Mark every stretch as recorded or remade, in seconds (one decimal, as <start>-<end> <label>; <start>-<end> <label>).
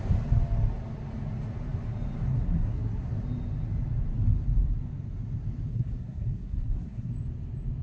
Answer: 0.0-2.3 recorded; 2.3-3.1 remade; 3.1-5.7 recorded; 5.7-7.1 remade; 7.1-7.8 recorded